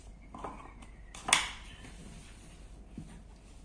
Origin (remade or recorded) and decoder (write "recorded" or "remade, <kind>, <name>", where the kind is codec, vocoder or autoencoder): recorded